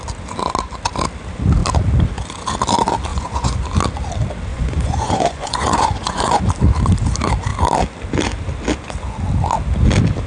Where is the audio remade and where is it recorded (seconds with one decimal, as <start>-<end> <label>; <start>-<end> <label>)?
0.0-3.1 recorded; 3.1-3.6 remade; 3.6-4.5 recorded; 4.5-6.4 remade; 6.4-10.3 recorded